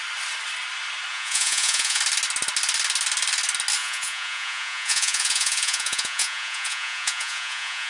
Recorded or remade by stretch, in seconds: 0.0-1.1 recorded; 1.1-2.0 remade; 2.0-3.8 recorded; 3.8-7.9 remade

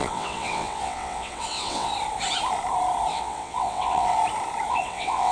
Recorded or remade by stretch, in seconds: 0.0-1.9 remade; 1.9-3.1 recorded; 3.1-4.2 remade; 4.2-4.7 recorded; 4.7-5.3 remade

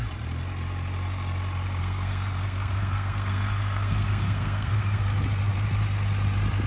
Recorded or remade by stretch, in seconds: 0.0-1.8 recorded; 1.8-5.0 remade; 5.0-6.7 recorded

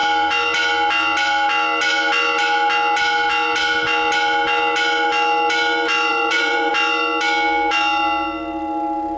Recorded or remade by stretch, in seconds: 0.0-6.1 recorded; 6.1-6.7 remade; 6.7-9.2 recorded

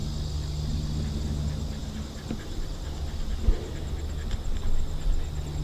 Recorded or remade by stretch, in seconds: 0.0-5.6 recorded

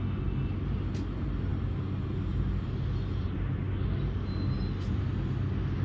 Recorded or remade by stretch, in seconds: 0.0-5.8 recorded

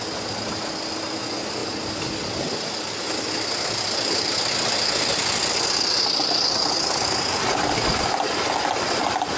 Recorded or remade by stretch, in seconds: 0.0-9.4 recorded

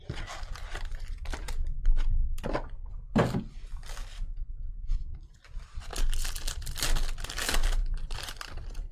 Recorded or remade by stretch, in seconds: 0.0-4.1 recorded; 4.1-4.9 remade; 4.9-7.6 recorded; 7.6-8.4 remade; 8.4-8.9 recorded